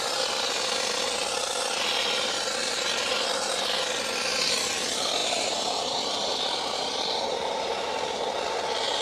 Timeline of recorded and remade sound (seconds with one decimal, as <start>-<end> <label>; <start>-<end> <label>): 0.0-5.2 recorded; 5.2-8.2 remade; 8.2-9.0 recorded

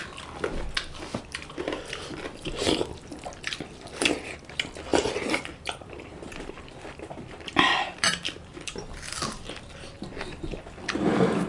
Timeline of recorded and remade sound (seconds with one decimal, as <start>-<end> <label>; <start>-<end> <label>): 0.0-1.1 recorded; 1.1-4.1 remade; 4.1-4.9 recorded; 4.9-9.7 remade; 9.7-11.5 recorded

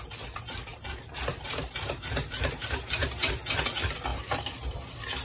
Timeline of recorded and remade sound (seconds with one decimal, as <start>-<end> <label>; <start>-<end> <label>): 0.0-0.7 recorded; 0.7-2.1 remade; 2.1-2.6 recorded; 2.6-3.3 remade; 3.3-4.1 recorded; 4.1-5.2 remade

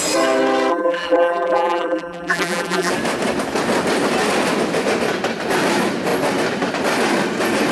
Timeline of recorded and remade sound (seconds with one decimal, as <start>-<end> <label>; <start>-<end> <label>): 0.0-0.7 recorded; 0.7-2.9 remade; 2.9-7.7 recorded

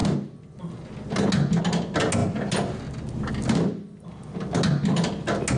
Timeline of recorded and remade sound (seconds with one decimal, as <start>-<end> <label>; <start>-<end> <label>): 0.0-5.6 recorded

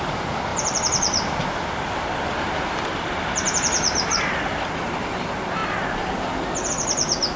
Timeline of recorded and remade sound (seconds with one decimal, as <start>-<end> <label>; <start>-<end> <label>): 0.0-0.5 recorded; 0.5-4.9 remade; 4.9-7.4 recorded

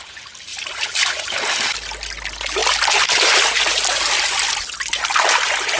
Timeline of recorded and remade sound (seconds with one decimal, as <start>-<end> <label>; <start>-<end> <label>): 0.0-0.5 recorded; 0.5-1.3 remade; 1.3-5.8 recorded

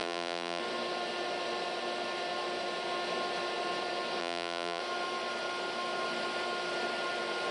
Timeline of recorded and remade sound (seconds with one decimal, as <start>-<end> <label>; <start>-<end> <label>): 0.0-0.6 remade; 0.6-4.2 recorded; 4.2-4.8 remade; 4.8-7.5 recorded